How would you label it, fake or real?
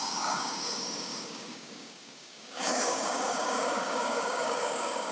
fake